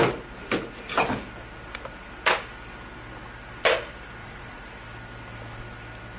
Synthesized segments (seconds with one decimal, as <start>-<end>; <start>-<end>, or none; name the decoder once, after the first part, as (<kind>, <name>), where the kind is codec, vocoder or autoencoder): 4.2-4.7 (vocoder, Vocos)